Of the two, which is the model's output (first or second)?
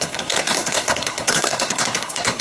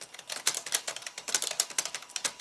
first